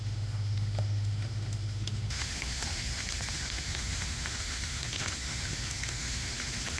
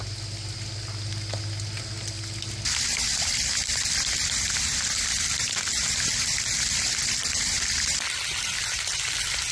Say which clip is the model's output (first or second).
first